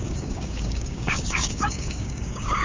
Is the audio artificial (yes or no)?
yes